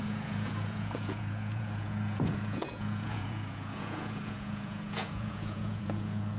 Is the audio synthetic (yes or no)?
yes